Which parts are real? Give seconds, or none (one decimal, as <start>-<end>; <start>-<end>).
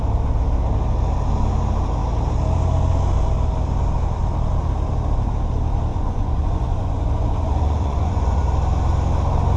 0.0-5.9; 8.4-9.6